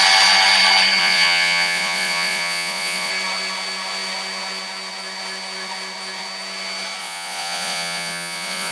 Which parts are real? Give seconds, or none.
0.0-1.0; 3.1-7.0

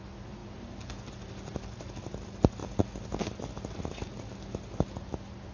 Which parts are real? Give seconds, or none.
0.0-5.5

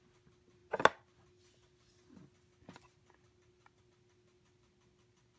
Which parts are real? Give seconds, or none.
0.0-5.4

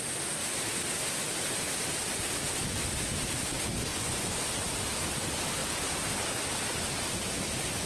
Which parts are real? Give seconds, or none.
0.0-3.9; 4.4-7.9

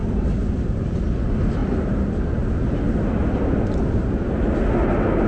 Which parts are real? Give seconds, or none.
0.0-5.3